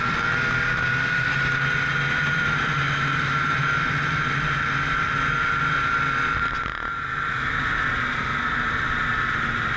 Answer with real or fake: real